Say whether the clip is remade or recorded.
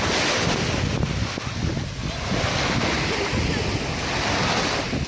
recorded